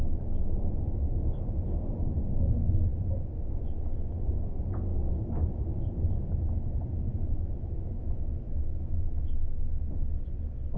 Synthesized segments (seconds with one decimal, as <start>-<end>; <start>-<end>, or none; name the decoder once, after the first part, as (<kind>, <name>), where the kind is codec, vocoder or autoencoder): 4.9-5.5 (autoencoder, DAC-VAE); 7.1-9.2